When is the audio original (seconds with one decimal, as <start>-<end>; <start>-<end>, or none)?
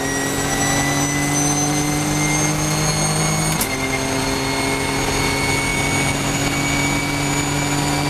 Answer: 0.0-8.1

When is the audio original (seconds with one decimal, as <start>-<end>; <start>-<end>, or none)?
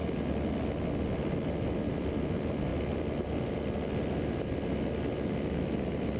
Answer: 0.5-2.7; 4.8-6.2